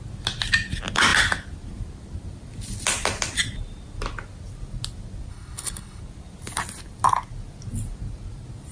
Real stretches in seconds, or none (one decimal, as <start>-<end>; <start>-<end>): 0.0-5.3; 6.0-8.7

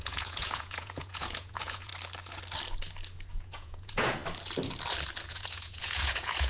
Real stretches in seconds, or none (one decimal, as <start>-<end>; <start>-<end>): 1.9-3.3; 4.2-5.2

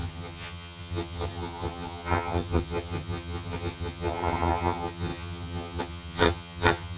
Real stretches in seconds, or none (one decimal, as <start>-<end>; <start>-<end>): none

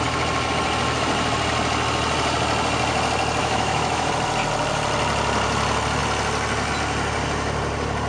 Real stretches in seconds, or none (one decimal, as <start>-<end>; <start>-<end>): 0.0-3.4; 4.1-8.1